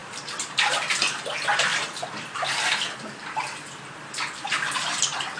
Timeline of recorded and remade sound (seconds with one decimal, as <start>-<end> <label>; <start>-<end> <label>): 0.0-5.4 remade